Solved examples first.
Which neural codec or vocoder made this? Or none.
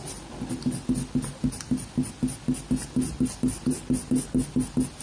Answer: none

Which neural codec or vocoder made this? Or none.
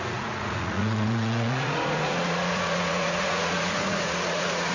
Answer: vocoder, Vocos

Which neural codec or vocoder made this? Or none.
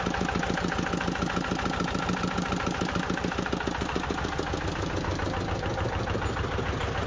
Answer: none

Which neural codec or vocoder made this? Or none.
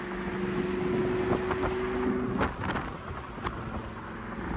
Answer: none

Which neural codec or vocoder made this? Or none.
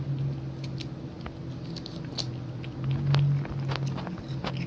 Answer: none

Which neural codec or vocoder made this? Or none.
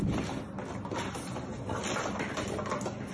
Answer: none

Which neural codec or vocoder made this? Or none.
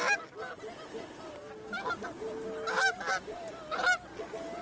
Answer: none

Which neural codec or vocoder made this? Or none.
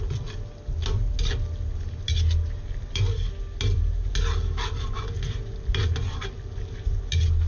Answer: none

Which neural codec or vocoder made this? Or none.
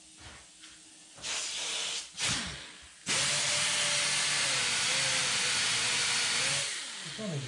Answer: none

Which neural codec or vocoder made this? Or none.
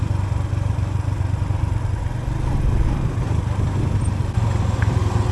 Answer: none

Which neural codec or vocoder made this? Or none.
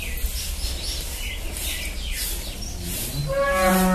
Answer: none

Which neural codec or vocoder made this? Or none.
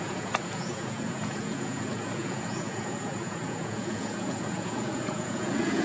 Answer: vocoder, Vocos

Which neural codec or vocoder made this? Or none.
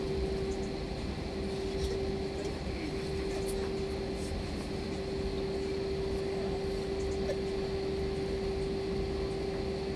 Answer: none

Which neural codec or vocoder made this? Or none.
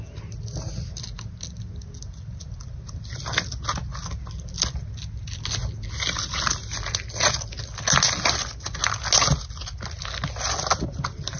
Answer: none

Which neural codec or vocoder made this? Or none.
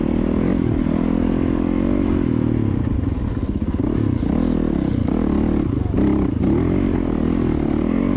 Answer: none